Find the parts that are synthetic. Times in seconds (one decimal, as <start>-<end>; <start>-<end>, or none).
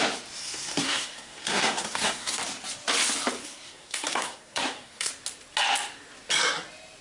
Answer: 0.4-2.4; 3.4-5.1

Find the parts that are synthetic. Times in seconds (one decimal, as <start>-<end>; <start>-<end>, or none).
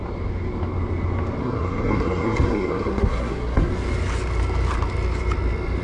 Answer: 1.4-3.7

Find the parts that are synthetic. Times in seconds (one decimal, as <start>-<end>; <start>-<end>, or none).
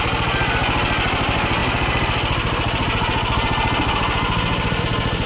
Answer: 1.6-4.8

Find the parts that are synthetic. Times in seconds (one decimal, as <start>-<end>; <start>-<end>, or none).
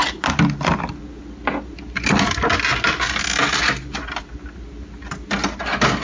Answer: none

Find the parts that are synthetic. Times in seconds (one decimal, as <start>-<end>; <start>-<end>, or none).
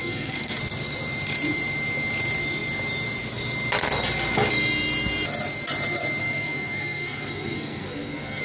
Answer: 0.0-0.6; 6.2-8.4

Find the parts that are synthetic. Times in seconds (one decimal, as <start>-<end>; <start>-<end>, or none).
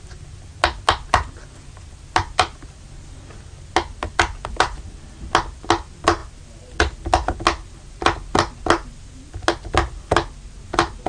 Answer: none